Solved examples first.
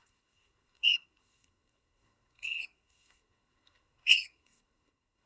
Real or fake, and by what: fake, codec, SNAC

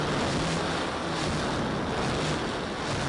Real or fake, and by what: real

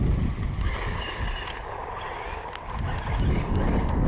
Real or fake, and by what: real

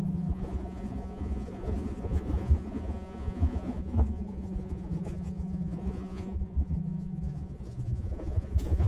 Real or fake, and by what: fake, vocoder, Vocos